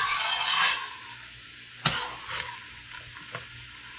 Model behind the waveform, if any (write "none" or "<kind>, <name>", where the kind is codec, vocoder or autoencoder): none